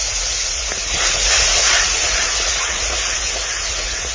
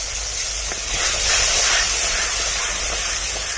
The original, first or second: second